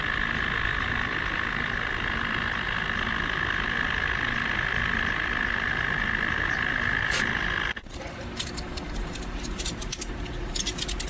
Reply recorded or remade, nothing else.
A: recorded